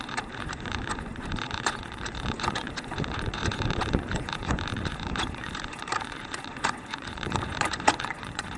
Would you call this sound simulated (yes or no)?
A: yes